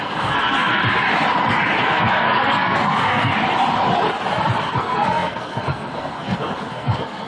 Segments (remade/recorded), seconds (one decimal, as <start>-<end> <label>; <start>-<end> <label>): 0.0-0.8 remade; 0.8-1.8 recorded; 1.8-3.3 remade; 3.3-4.6 recorded; 4.6-7.3 remade